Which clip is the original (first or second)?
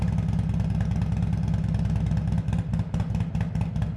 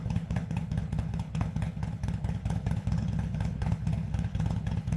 first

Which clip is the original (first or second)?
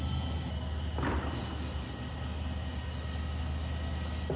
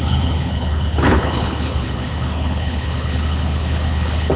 first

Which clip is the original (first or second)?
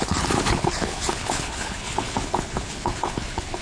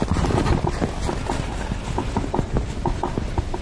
second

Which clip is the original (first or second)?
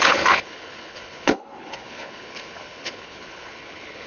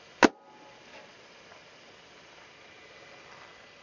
second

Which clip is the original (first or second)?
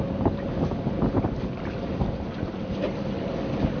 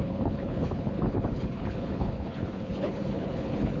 first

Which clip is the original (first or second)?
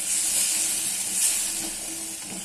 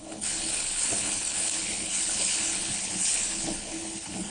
first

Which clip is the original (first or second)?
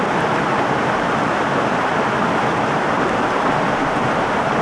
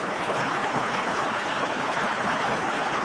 first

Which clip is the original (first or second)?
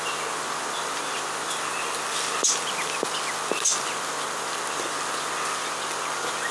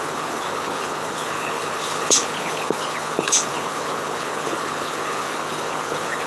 first